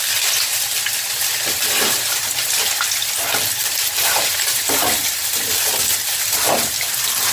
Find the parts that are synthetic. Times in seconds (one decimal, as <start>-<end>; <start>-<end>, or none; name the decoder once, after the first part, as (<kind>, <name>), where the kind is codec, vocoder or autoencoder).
3.6-5.2 (vocoder, BigVGAN v2)